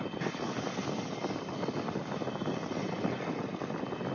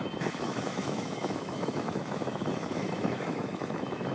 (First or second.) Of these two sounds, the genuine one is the first